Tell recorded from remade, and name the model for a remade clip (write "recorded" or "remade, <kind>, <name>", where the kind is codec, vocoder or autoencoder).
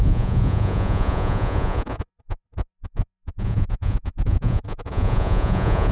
remade, vocoder, Vocos